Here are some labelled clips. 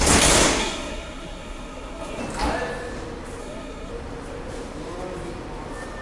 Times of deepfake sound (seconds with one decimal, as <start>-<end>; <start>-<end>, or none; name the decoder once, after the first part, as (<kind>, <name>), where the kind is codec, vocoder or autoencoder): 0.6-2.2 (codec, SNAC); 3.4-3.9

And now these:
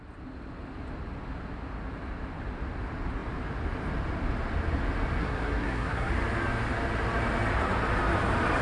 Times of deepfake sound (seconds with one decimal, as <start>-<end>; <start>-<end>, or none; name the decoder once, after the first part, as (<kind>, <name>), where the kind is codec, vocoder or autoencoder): 5.2-6.1 (codec, SNAC)

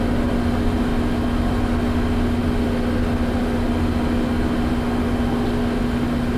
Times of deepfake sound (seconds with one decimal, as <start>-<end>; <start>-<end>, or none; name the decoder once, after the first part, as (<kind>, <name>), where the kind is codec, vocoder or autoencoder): none